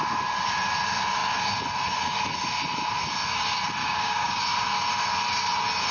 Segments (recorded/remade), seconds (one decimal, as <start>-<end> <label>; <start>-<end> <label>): 0.0-3.8 recorded; 3.8-4.4 remade; 4.4-5.9 recorded